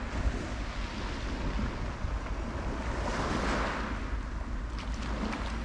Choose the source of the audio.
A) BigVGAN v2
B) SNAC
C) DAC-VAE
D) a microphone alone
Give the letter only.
D